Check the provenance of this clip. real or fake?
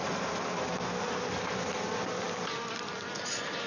real